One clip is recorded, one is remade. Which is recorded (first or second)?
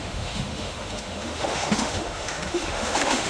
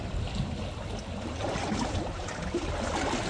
second